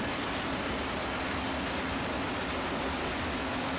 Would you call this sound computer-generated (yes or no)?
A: no